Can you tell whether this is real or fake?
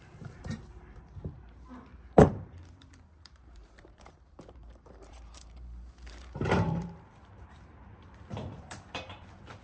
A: fake